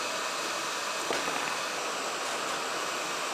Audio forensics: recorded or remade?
recorded